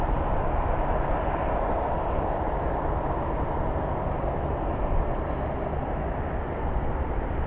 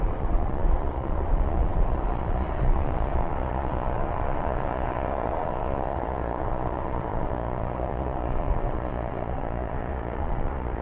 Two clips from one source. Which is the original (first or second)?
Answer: first